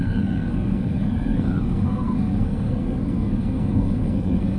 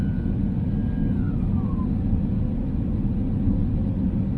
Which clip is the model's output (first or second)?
first